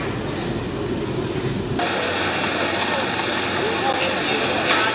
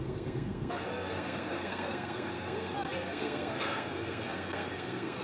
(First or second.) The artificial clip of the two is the second